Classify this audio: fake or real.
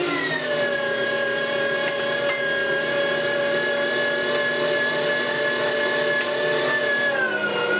real